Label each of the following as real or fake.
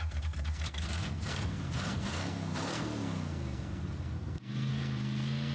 fake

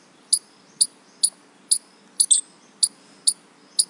real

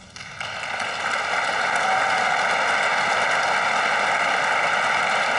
real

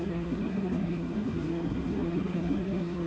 fake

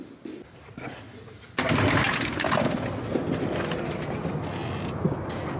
real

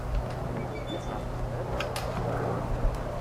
real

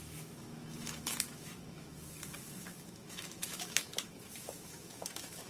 fake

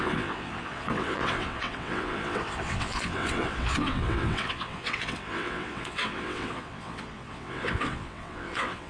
fake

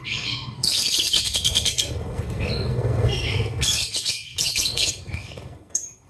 fake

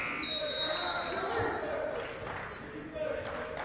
real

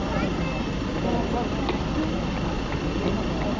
real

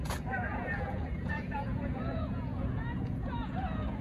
fake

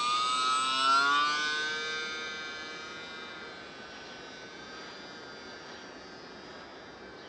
real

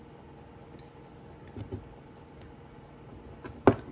real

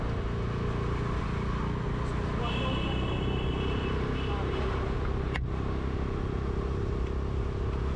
real